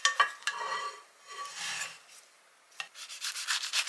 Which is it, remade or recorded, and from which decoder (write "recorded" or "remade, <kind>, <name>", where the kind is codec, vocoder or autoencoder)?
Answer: recorded